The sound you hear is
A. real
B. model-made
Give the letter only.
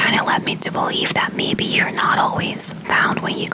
A